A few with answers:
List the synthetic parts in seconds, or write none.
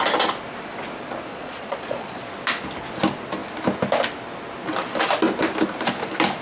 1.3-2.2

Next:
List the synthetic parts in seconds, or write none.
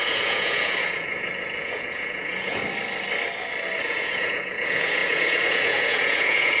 0.0-2.6; 3.8-6.6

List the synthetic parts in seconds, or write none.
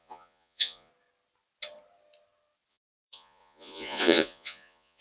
0.0-0.9; 2.7-5.0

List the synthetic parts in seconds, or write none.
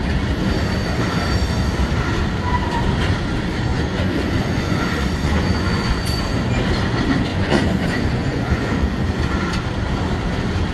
3.7-6.2; 7.3-9.3